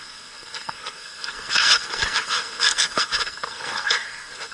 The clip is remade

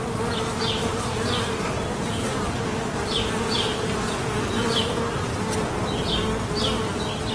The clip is recorded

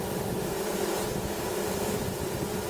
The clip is recorded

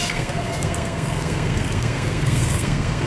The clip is remade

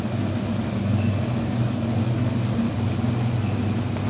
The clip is recorded